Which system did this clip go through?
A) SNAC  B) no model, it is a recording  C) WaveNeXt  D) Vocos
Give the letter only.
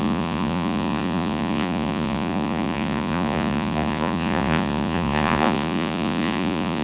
D